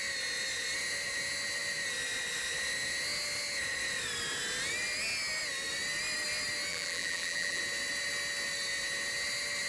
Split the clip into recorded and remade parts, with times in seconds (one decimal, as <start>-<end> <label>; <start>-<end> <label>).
0.0-6.7 recorded; 6.7-7.6 remade; 7.6-9.7 recorded